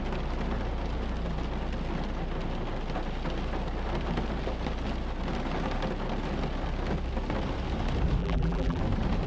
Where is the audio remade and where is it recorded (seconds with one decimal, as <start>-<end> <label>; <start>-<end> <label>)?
0.0-8.2 recorded; 8.2-8.8 remade; 8.8-9.3 recorded